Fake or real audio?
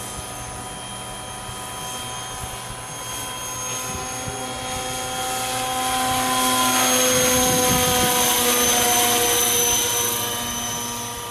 real